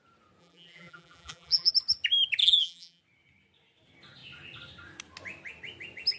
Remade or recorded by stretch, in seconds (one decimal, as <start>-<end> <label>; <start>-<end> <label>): 0.0-0.4 recorded; 0.4-1.7 remade; 1.7-2.4 recorded; 2.4-3.0 remade; 3.0-6.2 recorded